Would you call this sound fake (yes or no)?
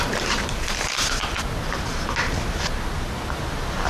no